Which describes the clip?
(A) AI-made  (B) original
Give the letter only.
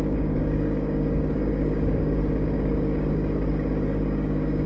A